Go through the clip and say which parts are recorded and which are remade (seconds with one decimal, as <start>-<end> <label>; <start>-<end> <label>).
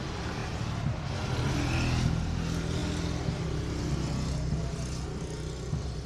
0.0-6.1 recorded